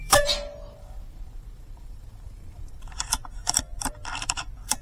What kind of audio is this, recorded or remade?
remade